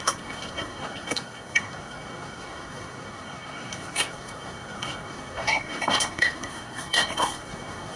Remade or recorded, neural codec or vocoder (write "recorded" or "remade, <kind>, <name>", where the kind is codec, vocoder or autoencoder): remade, codec, SNAC